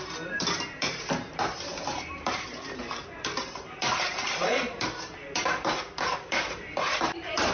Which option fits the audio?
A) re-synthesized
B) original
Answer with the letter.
A